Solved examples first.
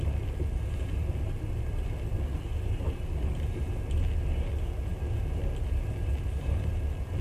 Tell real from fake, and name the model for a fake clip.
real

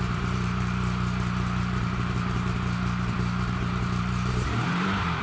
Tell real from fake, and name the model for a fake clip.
fake, vocoder, BigVGAN v2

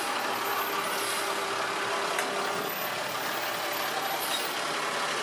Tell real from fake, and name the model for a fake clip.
real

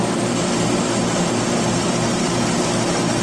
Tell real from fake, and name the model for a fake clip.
fake, vocoder, BigVGAN v2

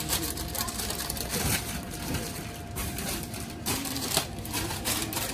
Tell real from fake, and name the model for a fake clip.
fake, vocoder, BigVGAN v2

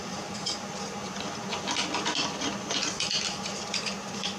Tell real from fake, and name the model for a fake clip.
real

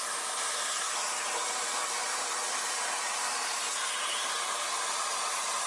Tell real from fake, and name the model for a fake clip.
real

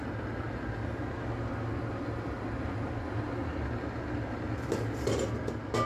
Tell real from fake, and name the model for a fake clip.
real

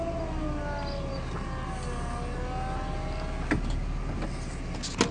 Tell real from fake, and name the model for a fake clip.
real